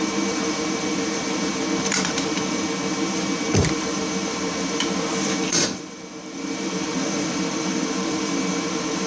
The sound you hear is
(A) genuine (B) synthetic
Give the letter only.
B